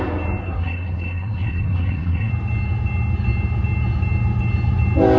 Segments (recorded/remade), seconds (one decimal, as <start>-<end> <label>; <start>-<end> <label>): 0.0-0.4 recorded; 0.4-2.3 remade; 2.3-5.2 recorded